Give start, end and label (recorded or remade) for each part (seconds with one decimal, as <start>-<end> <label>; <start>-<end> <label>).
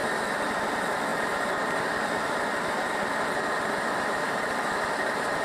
0.0-0.7 remade; 0.7-5.4 recorded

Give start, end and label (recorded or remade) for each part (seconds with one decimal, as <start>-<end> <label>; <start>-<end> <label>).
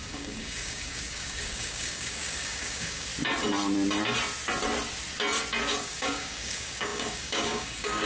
0.0-3.1 remade; 3.1-5.8 recorded; 5.8-8.1 remade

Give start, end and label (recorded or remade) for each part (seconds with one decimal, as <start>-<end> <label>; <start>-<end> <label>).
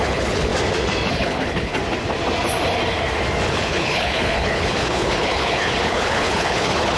0.0-0.5 remade; 0.5-1.1 recorded; 1.1-1.8 remade; 1.8-3.5 recorded; 3.5-7.0 remade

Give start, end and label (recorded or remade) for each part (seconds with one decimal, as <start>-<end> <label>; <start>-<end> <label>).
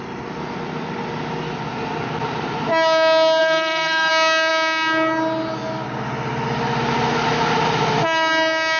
0.0-3.4 recorded; 3.4-4.1 remade; 4.1-8.8 recorded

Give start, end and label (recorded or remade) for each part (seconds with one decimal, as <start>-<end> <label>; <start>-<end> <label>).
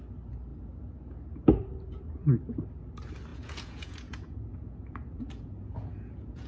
0.0-0.5 recorded; 0.5-1.4 remade; 1.4-3.3 recorded; 3.3-6.5 remade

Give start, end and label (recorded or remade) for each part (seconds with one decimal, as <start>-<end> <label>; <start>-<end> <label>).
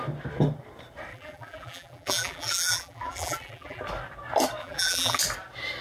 0.0-1.1 recorded; 1.1-3.8 remade; 3.8-4.6 recorded; 4.6-5.2 remade; 5.2-5.8 recorded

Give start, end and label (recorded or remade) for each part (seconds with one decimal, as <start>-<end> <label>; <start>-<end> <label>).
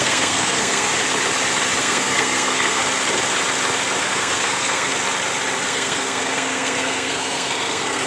0.0-0.9 remade; 0.9-1.8 recorded; 1.8-2.8 remade; 2.8-4.0 recorded; 4.0-4.9 remade; 4.9-5.7 recorded; 5.7-8.1 remade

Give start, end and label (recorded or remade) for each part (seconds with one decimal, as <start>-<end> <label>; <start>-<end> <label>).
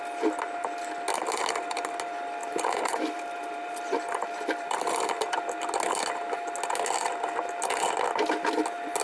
0.0-2.4 recorded; 2.4-5.7 remade; 5.7-9.0 recorded